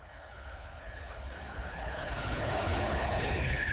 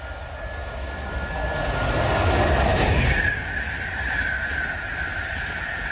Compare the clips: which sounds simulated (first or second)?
first